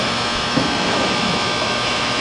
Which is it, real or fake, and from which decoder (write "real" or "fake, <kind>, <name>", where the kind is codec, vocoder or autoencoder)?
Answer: fake, autoencoder, DAC-VAE